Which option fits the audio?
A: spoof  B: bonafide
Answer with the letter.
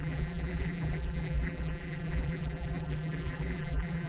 A